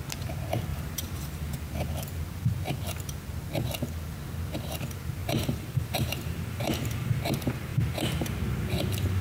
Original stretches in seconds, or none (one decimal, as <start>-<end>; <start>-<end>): 0.0-0.7; 1.5-5.2; 7.2-9.2